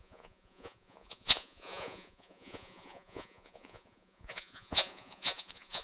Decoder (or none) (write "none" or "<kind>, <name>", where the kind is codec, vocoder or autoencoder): vocoder, Vocos